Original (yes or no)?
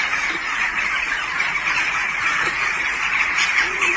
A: no